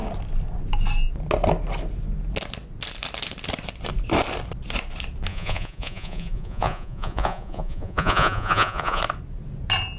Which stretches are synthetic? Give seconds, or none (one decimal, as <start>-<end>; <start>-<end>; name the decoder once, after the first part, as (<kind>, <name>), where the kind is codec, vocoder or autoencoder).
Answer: 5.3-9.0 (vocoder, Vocos)